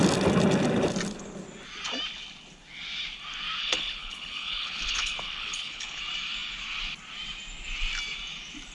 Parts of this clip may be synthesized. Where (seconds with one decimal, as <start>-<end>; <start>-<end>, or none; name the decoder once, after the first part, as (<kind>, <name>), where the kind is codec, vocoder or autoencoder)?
3.6-6.0 (codec, HILCodec)